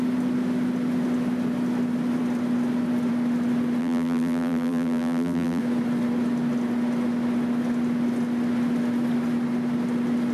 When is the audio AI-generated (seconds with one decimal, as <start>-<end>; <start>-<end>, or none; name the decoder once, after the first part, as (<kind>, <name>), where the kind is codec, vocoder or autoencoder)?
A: 3.8-5.6 (vocoder, BigVGAN v2)